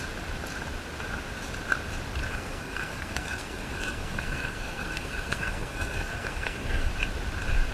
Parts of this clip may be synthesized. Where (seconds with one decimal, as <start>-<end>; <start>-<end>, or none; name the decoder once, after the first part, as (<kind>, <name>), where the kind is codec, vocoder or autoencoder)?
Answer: 2.3-6.9 (codec, SNAC)